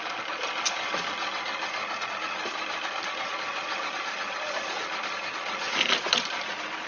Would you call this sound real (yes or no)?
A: yes